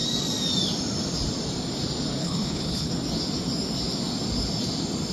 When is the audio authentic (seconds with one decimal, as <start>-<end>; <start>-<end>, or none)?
0.0-2.2; 2.9-5.1

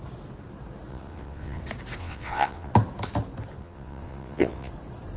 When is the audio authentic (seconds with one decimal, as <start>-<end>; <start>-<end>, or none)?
0.0-0.9; 1.6-2.0; 2.7-3.6; 4.7-5.2